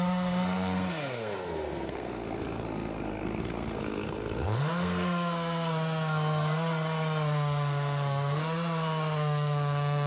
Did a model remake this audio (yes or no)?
yes